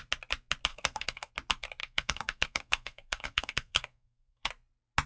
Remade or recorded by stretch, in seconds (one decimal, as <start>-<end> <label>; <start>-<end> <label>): 0.0-0.7 recorded; 0.7-1.3 remade; 1.3-1.8 recorded; 1.8-4.5 remade; 4.5-5.1 recorded